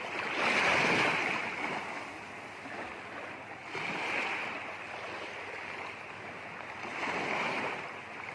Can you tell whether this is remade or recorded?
recorded